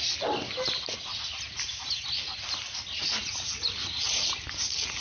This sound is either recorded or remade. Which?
recorded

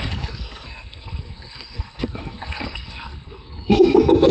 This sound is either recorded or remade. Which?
remade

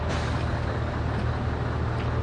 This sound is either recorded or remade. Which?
recorded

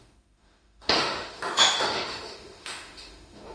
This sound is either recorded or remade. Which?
remade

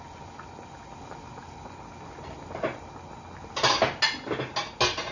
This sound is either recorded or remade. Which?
recorded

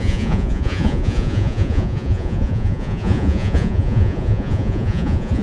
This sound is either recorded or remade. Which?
remade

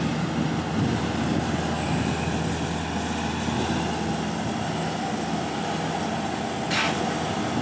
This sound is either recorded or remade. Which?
recorded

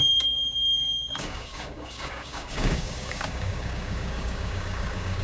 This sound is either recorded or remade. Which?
remade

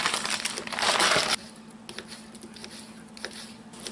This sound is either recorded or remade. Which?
recorded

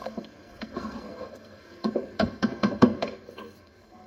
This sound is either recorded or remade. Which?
remade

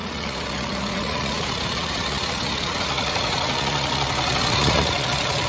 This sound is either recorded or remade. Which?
remade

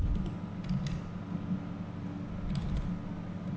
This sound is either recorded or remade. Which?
recorded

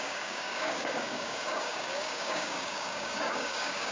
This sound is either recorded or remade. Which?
remade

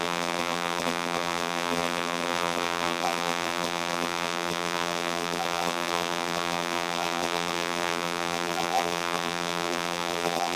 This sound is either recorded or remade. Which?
remade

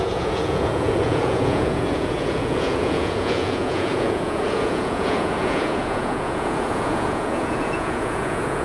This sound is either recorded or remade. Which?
remade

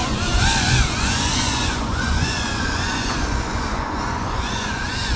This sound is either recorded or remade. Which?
remade